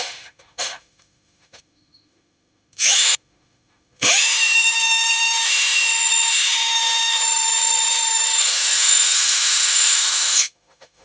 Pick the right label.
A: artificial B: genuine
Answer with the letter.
A